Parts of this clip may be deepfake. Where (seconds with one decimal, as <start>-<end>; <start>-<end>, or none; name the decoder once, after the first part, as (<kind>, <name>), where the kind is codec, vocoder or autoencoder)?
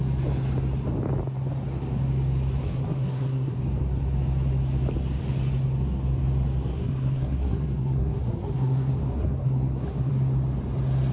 2.6-3.6 (codec, SNAC); 6.7-10.1